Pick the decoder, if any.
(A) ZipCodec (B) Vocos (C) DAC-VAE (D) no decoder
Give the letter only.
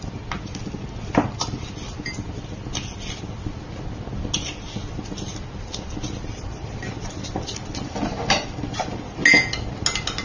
D